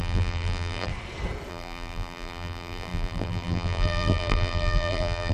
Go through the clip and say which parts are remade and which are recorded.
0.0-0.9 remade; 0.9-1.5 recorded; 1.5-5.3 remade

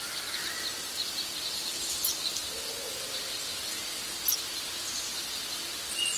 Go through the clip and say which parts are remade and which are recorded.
0.0-6.2 recorded

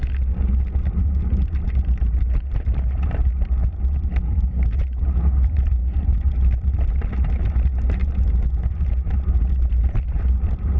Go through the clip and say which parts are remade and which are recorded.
0.0-1.0 recorded; 1.0-10.8 remade